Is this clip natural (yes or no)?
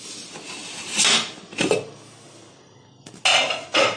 yes